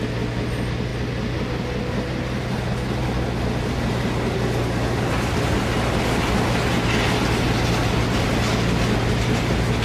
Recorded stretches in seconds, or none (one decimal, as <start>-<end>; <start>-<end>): 0.0-9.8